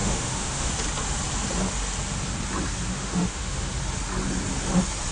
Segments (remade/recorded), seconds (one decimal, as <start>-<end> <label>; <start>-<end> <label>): 0.0-0.7 remade; 0.7-2.9 recorded; 2.9-3.7 remade; 3.7-5.1 recorded